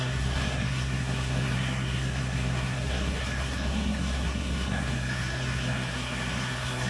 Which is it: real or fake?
fake